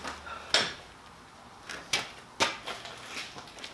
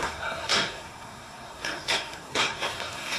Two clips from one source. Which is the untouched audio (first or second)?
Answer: first